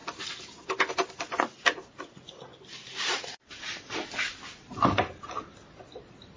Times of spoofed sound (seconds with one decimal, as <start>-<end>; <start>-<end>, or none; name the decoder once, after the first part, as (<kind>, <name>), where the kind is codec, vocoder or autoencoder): none